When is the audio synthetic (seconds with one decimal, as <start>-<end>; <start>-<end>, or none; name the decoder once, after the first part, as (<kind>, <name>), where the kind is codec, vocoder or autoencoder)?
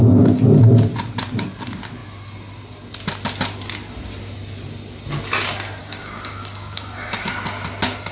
5.8-7.3 (codec, DAC)